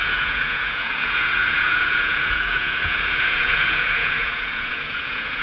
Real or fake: fake